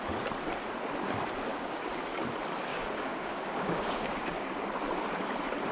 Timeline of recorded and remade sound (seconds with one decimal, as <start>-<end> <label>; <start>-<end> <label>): 0.0-1.5 recorded; 1.5-2.2 remade; 2.2-2.7 recorded; 2.7-4.6 remade; 4.6-5.7 recorded